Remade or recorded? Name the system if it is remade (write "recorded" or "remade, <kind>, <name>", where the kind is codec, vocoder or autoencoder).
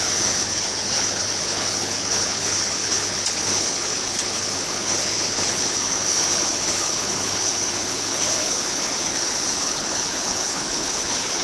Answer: remade, codec, HILCodec